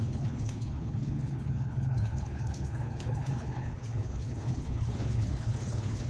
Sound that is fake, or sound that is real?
fake